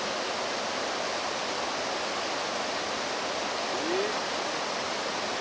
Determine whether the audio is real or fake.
real